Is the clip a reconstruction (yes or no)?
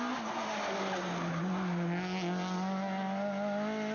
no